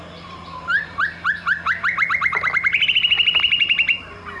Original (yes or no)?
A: no